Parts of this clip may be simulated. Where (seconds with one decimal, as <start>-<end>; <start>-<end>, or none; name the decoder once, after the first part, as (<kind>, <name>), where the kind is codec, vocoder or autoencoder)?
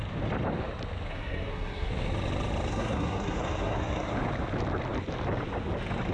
1.1-1.9 (codec, SNAC); 2.7-4.1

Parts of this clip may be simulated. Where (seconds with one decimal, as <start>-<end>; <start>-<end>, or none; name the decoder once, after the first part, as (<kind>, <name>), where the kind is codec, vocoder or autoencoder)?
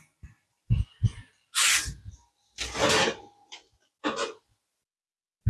none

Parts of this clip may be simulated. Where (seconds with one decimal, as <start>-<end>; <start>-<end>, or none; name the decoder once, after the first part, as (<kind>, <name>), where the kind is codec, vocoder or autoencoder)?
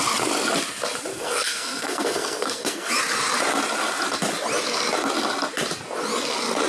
1.1-2.9 (codec, SNAC)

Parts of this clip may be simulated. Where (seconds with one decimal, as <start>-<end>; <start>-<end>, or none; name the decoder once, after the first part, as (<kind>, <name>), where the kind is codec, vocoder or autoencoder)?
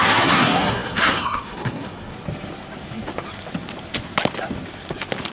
0.0-2.1 (codec, SNAC)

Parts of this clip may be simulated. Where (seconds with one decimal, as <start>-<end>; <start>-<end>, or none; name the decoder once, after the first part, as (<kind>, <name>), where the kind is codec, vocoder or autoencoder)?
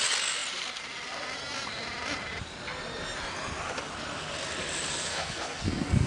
4.9-6.1 (codec, SNAC)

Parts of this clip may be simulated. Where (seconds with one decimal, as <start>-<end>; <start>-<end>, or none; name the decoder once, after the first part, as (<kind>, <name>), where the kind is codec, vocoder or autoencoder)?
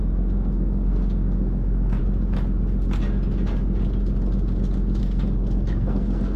0.0-2.0 (codec, SNAC); 5.0-6.4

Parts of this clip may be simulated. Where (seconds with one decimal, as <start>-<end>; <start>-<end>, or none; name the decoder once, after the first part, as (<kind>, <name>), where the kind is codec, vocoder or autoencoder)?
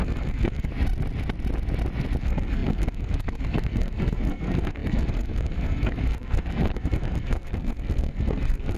0.0-0.7 (codec, SNAC); 2.2-8.8